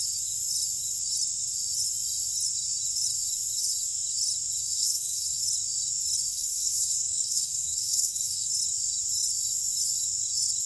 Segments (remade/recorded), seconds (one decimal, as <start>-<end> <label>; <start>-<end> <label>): 0.0-4.6 recorded; 4.6-5.4 remade; 5.4-6.3 recorded; 6.3-8.5 remade; 8.5-10.7 recorded